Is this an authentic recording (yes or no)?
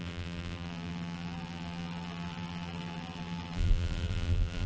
no